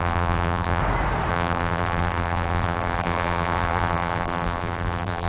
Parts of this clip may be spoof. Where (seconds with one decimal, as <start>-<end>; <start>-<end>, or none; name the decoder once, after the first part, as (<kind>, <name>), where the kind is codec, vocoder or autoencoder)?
0.0-0.8 (vocoder, BigVGAN v2); 1.3-5.3